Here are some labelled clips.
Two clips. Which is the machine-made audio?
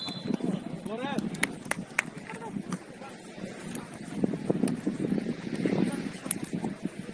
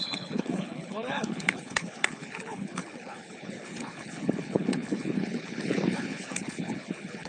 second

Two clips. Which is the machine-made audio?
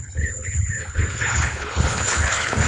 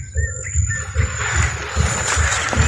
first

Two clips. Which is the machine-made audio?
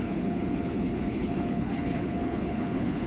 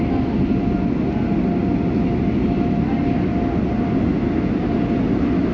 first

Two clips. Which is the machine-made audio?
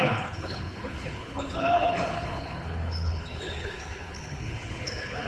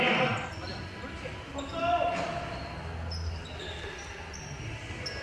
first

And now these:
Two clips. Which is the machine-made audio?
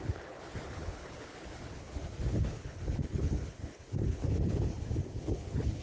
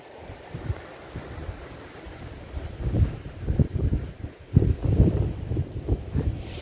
first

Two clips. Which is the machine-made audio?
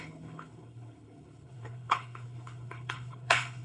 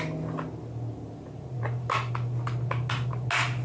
first